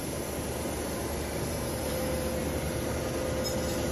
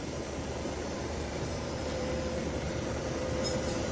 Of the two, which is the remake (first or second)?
second